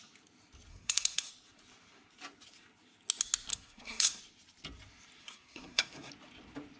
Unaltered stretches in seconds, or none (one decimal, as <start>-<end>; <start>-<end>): 0.0-0.7; 1.3-3.5; 4.2-5.2; 6.1-6.8